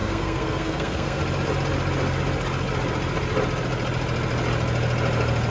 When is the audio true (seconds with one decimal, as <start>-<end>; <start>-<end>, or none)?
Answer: 1.2-5.5